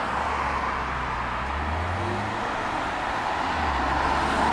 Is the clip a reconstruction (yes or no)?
no